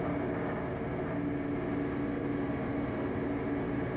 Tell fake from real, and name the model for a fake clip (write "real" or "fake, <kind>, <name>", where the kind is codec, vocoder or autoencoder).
real